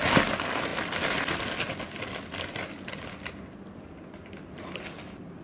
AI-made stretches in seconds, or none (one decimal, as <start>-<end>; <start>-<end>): none